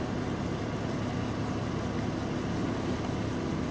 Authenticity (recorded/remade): recorded